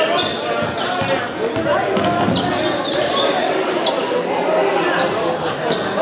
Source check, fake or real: real